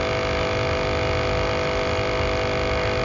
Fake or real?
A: real